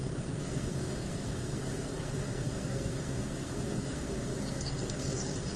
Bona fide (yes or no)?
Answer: no